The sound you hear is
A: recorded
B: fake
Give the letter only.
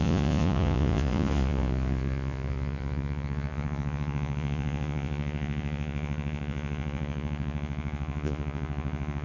B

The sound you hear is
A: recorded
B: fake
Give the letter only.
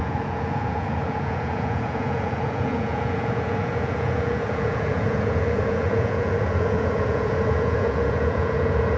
B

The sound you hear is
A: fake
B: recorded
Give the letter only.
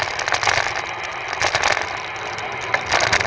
B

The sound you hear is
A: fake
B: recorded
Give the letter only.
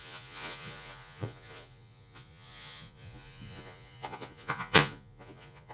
A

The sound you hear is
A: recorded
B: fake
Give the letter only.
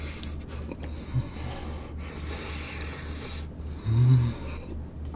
A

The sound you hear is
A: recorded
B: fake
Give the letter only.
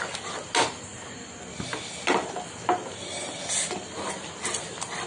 A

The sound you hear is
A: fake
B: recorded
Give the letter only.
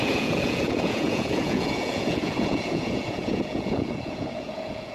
A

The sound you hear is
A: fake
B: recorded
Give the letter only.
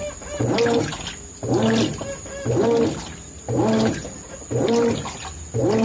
B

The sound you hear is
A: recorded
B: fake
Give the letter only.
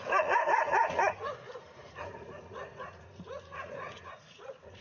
B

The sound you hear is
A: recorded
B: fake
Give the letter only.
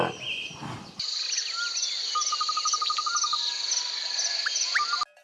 A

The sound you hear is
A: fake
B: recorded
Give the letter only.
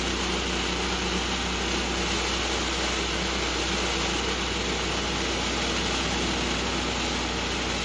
B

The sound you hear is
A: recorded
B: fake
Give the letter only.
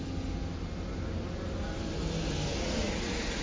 A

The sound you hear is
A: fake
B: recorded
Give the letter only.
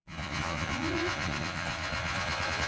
A